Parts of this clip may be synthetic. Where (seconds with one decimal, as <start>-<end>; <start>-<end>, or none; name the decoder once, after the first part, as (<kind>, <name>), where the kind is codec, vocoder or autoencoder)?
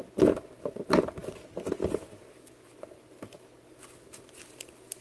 none